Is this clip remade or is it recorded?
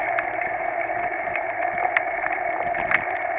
recorded